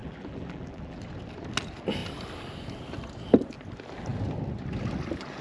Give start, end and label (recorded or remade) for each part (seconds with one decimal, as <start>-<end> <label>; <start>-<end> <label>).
0.0-1.0 remade; 1.0-5.4 recorded